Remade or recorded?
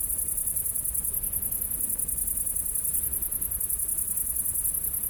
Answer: recorded